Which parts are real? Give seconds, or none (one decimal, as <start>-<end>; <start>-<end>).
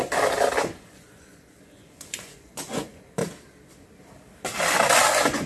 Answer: 0.0-0.6; 3.2-5.1